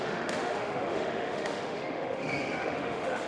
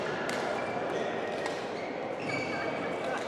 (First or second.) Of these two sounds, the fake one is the first